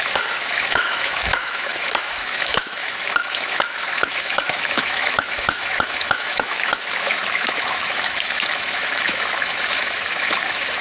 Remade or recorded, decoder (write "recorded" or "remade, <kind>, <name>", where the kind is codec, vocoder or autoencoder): remade, autoencoder, DAC-VAE